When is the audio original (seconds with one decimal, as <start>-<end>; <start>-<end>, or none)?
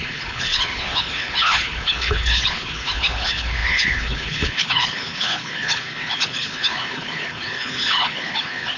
none